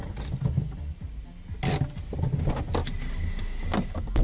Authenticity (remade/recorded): recorded